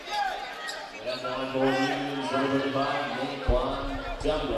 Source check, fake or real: real